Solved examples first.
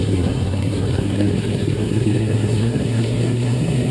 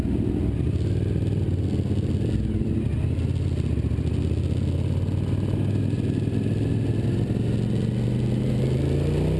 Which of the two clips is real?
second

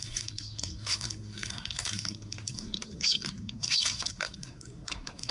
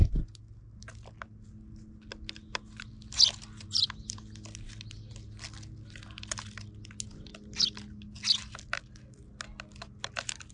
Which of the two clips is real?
second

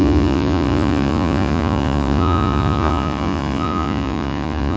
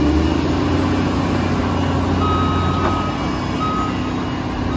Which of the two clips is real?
second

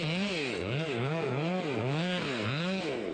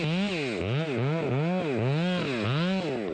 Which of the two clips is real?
second